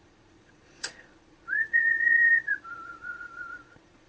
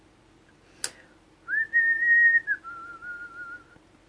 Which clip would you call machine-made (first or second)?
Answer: first